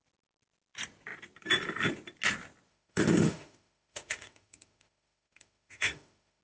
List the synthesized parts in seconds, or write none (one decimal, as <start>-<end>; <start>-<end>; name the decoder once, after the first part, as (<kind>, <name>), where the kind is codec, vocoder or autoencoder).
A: 2.7-6.4 (autoencoder, DAC-VAE)